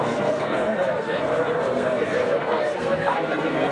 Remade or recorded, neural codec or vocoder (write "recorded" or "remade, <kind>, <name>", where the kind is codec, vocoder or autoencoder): remade, codec, SNAC